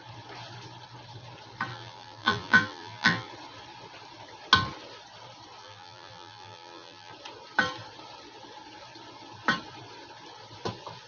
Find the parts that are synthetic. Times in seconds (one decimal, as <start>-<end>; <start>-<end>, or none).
1.7-3.3; 5.6-7.1

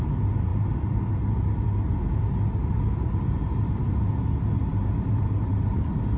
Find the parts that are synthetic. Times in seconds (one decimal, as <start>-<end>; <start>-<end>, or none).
4.7-6.2

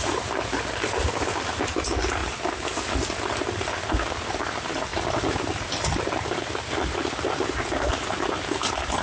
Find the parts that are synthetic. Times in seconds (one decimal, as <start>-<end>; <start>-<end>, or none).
none

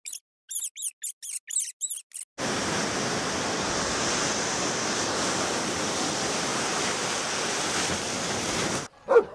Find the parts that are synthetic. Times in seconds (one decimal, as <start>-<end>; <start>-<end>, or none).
none

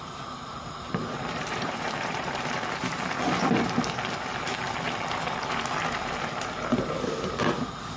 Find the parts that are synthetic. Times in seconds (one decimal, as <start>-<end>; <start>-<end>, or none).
0.4-2.4